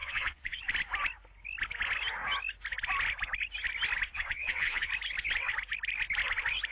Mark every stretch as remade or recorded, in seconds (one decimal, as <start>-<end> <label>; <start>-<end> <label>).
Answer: 0.0-0.6 remade; 0.6-4.1 recorded; 4.1-4.9 remade; 4.9-6.7 recorded